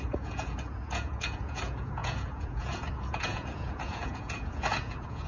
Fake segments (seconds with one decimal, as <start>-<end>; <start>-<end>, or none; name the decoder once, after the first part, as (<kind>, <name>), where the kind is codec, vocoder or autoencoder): 0.0-5.3 (vocoder, Vocos)